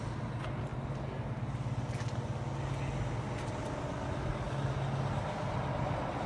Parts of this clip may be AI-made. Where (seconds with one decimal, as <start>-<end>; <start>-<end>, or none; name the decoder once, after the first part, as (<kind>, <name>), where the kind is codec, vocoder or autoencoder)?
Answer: none